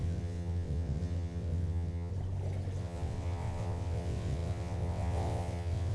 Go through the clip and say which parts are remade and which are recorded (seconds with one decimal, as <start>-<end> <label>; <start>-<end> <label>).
0.0-2.1 remade; 2.1-2.8 recorded; 2.8-5.9 remade